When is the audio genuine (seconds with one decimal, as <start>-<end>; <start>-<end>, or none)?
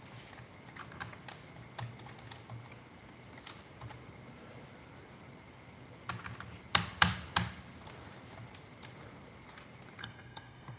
0.0-10.0